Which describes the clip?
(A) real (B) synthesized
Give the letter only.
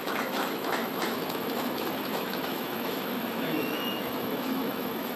B